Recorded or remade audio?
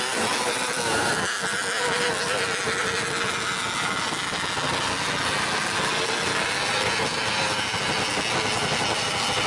recorded